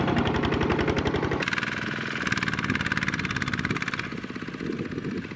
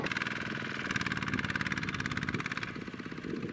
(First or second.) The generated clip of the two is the first